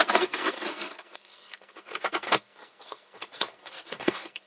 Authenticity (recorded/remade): remade